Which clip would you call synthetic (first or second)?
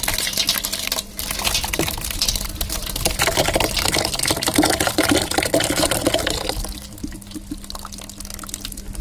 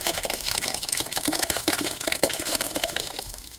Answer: second